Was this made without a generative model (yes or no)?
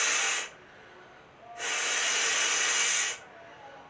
yes